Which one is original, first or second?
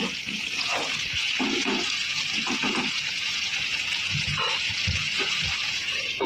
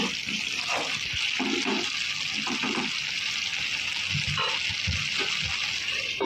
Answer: second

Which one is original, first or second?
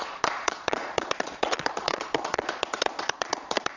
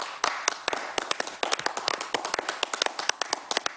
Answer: second